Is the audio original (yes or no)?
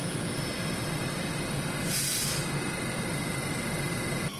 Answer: no